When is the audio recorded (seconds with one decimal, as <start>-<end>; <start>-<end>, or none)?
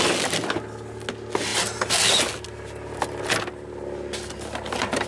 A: 0.0-5.1